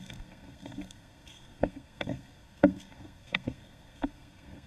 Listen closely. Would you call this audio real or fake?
fake